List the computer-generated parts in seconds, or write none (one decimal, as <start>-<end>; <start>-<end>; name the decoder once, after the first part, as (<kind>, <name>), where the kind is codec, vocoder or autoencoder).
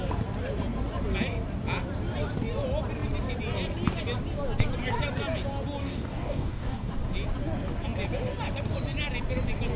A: 5.8-6.9 (codec, DAC)